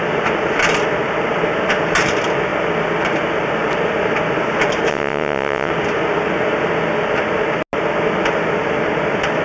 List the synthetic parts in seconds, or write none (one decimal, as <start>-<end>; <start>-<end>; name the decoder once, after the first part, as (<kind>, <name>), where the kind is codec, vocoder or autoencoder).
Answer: 4.9-5.7 (vocoder, WaveNeXt)